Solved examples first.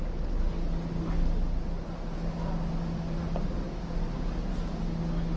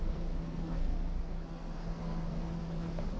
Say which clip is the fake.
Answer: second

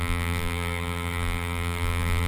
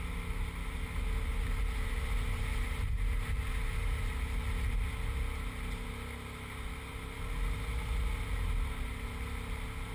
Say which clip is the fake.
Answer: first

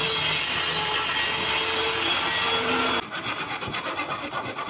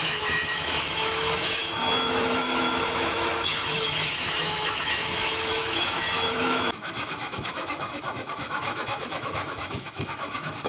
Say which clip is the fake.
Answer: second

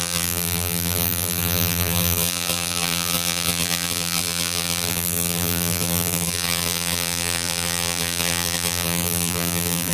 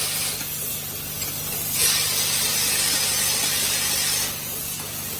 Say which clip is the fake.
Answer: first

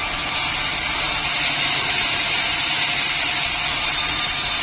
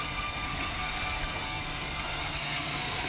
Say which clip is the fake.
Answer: second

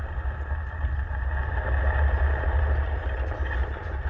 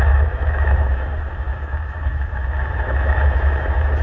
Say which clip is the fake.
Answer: second